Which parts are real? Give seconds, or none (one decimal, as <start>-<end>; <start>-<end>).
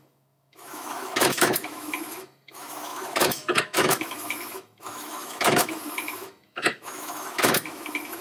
none